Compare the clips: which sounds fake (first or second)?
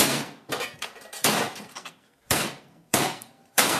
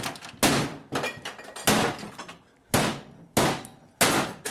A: first